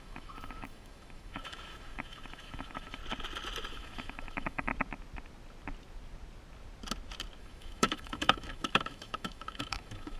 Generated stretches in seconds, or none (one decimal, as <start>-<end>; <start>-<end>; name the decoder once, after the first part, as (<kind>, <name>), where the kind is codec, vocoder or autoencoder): 0.0-3.0 (autoencoder, DAC-VAE); 3.7-4.7; 7.4-10.2

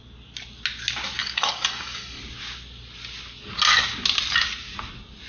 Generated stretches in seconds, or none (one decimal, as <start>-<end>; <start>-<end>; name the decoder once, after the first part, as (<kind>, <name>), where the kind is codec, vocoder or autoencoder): 1.2-2.2 (codec, DAC)

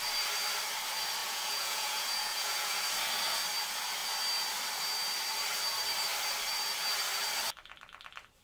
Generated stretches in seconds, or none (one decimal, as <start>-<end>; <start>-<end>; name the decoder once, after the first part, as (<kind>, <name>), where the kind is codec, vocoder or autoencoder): 1.2-2.8 (vocoder, Vocos)

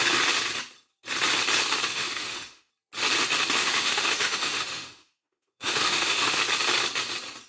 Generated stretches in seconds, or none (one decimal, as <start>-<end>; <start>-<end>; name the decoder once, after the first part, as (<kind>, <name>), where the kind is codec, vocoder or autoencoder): 1.9-2.7 (autoencoder, DAC-VAE); 3.6-6.4

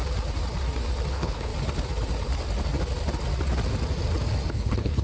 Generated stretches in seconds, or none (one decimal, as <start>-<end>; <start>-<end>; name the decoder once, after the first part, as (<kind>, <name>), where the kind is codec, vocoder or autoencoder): 1.1-1.5 (codec, HILCodec); 4.5-5.0

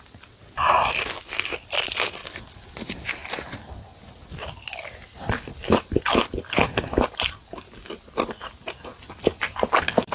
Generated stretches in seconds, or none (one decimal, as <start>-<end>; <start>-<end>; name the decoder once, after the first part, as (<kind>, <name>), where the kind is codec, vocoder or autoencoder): none